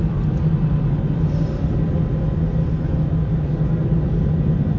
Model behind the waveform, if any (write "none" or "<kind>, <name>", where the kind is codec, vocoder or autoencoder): none